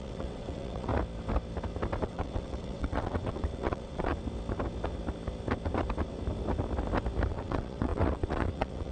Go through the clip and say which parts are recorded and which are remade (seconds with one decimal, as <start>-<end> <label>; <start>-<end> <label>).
0.0-0.9 remade; 0.9-2.0 recorded; 2.0-4.1 remade; 4.1-7.3 recorded; 7.3-8.9 remade